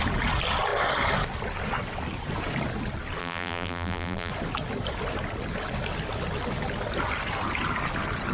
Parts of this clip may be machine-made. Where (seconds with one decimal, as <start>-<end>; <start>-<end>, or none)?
3.2-4.3